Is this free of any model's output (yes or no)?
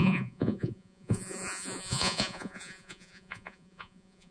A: no